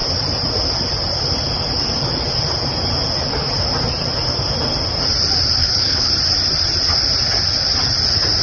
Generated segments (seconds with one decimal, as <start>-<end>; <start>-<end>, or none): 5.6-6.1